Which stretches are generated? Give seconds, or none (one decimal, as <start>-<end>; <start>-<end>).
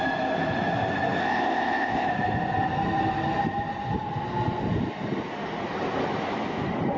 1.2-2.1